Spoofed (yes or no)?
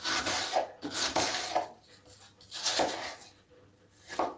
no